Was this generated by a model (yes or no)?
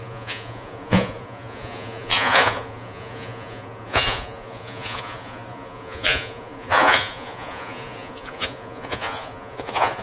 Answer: yes